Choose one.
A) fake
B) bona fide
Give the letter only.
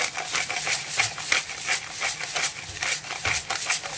B